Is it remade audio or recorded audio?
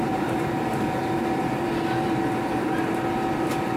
remade